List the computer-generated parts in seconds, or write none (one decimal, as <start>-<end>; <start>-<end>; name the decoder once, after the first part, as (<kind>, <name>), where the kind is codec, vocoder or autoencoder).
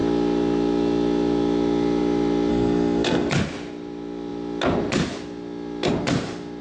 2.5-3.3 (codec, SNAC)